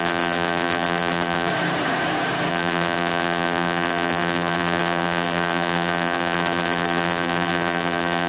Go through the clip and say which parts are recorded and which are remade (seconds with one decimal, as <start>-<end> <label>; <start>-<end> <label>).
0.0-1.5 remade; 1.5-2.5 recorded; 2.5-8.3 remade